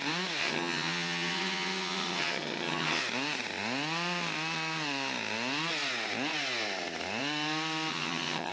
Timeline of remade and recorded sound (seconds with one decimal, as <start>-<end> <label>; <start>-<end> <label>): 0.0-0.4 recorded; 0.4-3.0 remade; 3.0-7.9 recorded; 7.9-8.5 remade